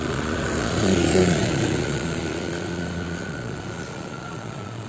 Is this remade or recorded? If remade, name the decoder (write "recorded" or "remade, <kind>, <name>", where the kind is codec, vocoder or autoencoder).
remade, vocoder, Vocos